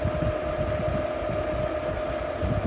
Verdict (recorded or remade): recorded